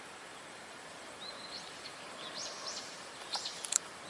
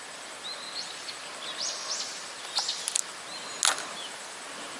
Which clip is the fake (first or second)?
first